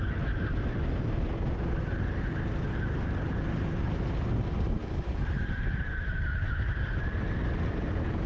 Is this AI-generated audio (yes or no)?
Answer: no